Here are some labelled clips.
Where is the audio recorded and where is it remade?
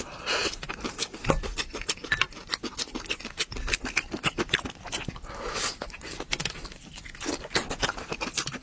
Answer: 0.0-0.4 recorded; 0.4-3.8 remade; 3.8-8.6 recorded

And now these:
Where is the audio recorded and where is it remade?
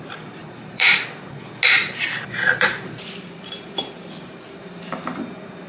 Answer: 0.0-0.4 recorded; 0.4-0.9 remade; 0.9-1.8 recorded; 1.8-5.2 remade; 5.2-5.7 recorded